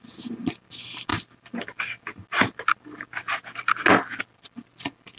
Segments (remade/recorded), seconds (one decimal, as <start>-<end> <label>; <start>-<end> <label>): 0.0-5.2 recorded

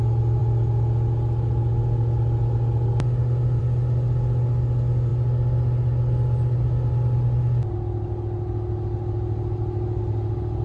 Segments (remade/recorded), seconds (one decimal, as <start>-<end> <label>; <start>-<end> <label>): 0.0-10.6 recorded

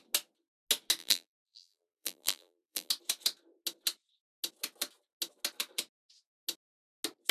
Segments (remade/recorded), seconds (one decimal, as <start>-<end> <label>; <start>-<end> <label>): 0.0-1.0 recorded; 1.0-2.9 remade; 2.9-7.3 recorded

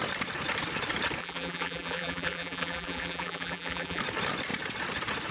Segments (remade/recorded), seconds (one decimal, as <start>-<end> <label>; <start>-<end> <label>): 0.0-1.2 recorded; 1.2-4.0 remade; 4.0-5.3 recorded

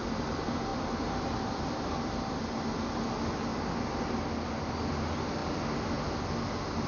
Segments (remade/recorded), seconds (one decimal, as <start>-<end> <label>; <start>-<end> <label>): 0.0-0.7 recorded; 0.7-1.7 remade; 1.7-3.5 recorded; 3.5-4.0 remade; 4.0-6.9 recorded

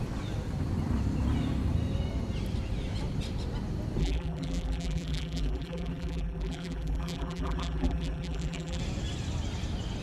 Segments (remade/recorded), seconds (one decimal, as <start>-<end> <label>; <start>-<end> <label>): 0.0-4.0 recorded; 4.0-8.8 remade; 8.8-10.0 recorded